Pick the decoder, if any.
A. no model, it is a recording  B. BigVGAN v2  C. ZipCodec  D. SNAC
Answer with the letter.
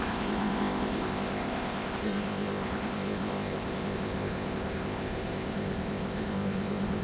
C